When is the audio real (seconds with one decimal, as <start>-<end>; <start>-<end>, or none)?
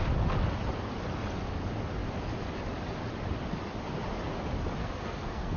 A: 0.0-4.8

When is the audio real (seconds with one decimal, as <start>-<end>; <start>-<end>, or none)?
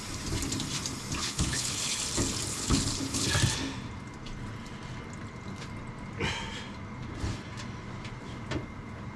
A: 0.0-1.2; 2.0-2.5; 3.3-9.2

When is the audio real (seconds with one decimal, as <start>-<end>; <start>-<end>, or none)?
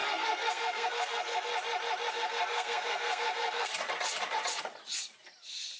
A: 1.5-2.1; 3.7-5.8